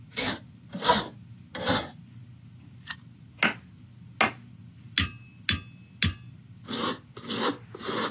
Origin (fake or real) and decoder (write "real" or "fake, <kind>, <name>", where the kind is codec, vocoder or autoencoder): real